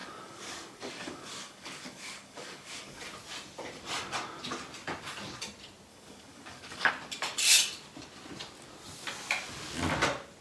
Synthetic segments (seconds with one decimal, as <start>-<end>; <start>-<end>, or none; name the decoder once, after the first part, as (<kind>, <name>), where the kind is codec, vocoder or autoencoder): 0.0-3.0 (codec, DAC); 5.9-6.9